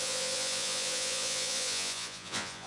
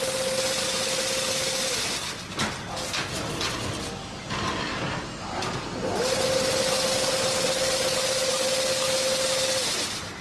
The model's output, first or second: first